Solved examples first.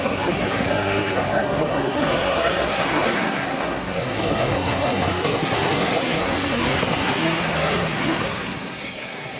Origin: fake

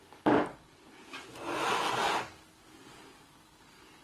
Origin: real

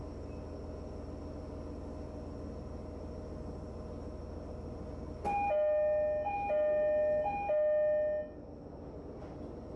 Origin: real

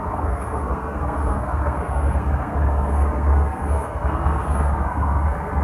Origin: fake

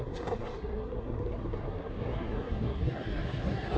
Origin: fake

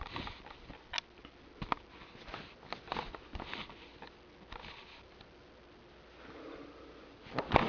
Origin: real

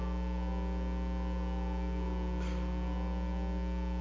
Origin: real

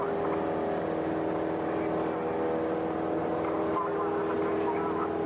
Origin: real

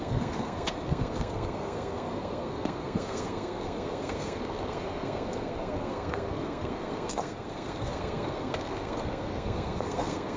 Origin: fake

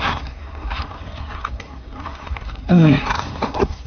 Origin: fake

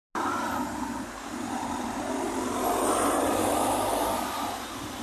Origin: real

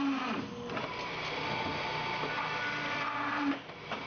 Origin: real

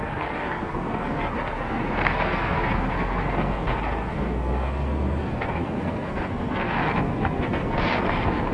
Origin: fake